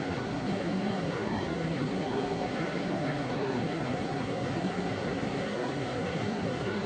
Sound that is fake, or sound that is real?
fake